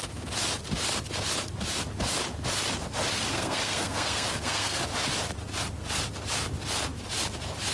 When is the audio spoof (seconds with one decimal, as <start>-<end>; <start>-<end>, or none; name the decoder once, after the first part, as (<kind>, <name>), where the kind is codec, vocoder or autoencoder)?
3.3-4.8 (codec, SNAC)

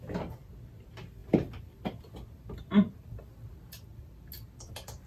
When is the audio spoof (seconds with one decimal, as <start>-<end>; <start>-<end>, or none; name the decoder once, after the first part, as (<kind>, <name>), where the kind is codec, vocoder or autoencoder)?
1.2-4.3 (vocoder, BigVGAN v2)

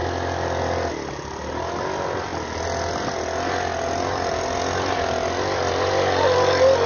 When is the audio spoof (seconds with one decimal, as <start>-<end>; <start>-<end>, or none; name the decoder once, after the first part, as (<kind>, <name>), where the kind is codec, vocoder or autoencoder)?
none

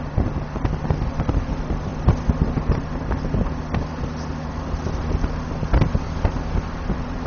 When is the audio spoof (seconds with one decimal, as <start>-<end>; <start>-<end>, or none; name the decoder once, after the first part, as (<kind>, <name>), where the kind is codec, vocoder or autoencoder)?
none

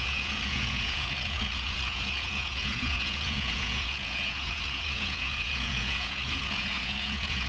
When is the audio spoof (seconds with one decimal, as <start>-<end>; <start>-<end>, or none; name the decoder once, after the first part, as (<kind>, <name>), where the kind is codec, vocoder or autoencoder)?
0.0-7.5 (vocoder, Vocos)

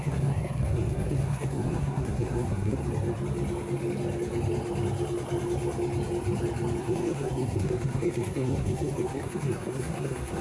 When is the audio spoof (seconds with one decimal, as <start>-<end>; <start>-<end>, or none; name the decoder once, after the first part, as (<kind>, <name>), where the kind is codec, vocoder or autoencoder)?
0.0-2.8 (codec, SNAC); 6.8-10.4

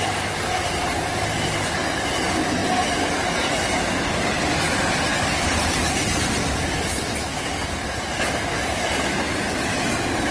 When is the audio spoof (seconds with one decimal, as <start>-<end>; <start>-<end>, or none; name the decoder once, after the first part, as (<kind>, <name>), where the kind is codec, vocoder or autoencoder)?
none